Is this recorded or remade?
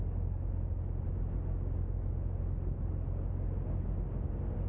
recorded